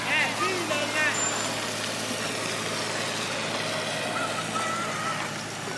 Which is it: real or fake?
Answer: real